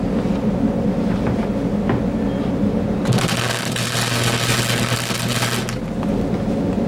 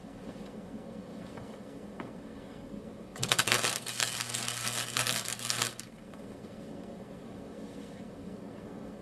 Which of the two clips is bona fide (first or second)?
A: first